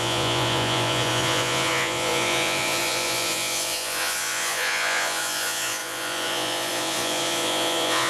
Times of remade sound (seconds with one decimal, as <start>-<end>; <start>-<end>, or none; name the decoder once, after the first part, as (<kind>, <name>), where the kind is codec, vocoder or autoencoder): 0.0-8.1 (vocoder, Vocos)